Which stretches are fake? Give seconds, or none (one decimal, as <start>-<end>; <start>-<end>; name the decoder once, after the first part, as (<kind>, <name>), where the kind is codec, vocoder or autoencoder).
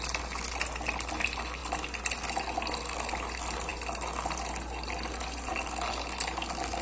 none